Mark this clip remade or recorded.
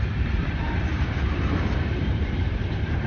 remade